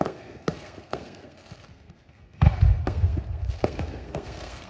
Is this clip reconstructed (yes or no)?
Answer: yes